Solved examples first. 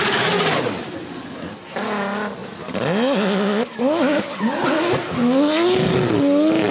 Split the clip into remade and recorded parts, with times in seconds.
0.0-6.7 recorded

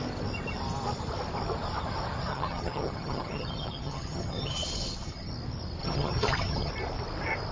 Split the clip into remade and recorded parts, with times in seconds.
0.0-2.3 recorded; 2.3-5.3 remade; 5.3-5.8 recorded; 5.8-6.7 remade; 6.7-7.5 recorded

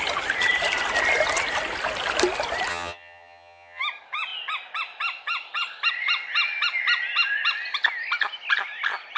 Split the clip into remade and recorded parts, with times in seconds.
0.0-2.7 recorded; 2.7-3.8 remade; 3.8-9.2 recorded

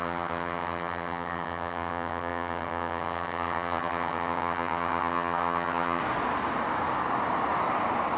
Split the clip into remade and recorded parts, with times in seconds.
0.0-6.0 remade; 6.0-8.2 recorded

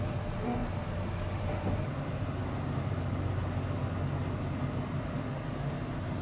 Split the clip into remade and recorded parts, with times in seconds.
0.0-6.2 recorded